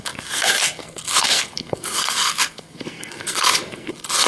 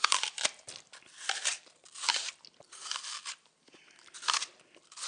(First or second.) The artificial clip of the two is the first